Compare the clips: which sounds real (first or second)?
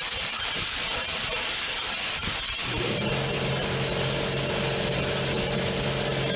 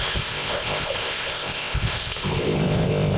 first